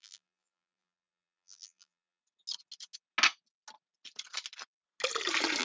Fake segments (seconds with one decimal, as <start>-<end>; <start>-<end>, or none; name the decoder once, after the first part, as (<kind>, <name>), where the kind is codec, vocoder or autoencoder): 0.0-2.2 (vocoder, BigVGAN v2)